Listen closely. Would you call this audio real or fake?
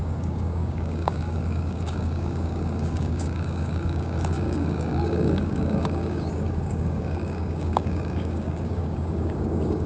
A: fake